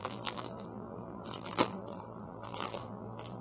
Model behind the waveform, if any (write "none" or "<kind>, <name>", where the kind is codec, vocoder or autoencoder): vocoder, BigVGAN v2